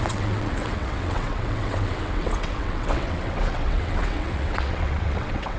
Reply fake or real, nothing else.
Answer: fake